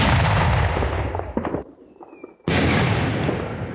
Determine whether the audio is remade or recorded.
recorded